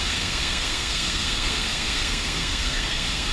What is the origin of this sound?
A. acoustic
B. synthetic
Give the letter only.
B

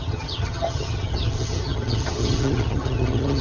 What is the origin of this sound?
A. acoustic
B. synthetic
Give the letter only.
B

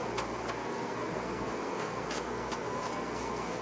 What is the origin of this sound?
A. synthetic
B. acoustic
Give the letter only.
A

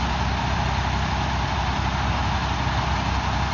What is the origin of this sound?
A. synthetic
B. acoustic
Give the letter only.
B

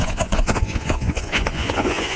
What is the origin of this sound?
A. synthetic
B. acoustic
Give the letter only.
A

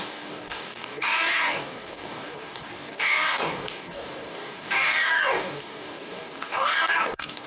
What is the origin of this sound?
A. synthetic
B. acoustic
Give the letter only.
A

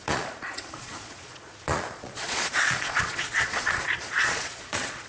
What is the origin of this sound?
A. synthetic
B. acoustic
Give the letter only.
A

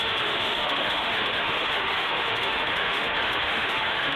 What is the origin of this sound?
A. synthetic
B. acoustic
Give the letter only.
A